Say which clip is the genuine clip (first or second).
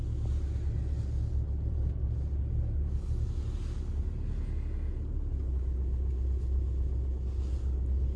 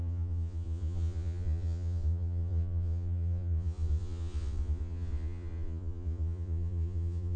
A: first